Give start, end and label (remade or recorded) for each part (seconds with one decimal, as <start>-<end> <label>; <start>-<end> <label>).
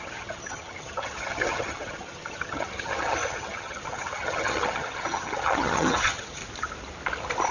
0.0-6.4 remade; 6.4-7.5 recorded